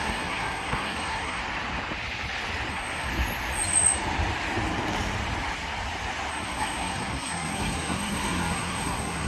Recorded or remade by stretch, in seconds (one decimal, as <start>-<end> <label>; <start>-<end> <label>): 0.0-1.4 remade; 1.4-2.7 recorded; 2.7-3.1 remade; 3.1-6.3 recorded; 6.3-9.3 remade